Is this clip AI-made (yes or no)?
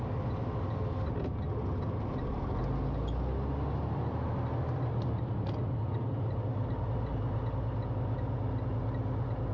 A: no